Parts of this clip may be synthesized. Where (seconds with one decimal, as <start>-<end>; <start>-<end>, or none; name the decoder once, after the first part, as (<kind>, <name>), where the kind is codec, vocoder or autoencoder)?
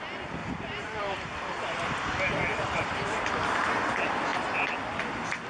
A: 0.4-3.7 (vocoder, BigVGAN v2); 4.3-5.0